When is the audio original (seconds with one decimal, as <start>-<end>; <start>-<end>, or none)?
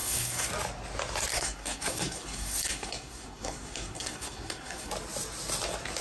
0.5-1.3; 4.9-6.0